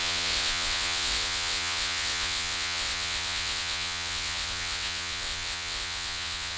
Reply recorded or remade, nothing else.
remade